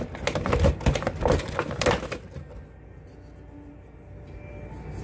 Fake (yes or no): no